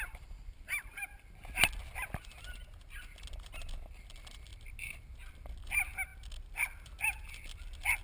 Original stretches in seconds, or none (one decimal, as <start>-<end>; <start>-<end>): 0.0-8.0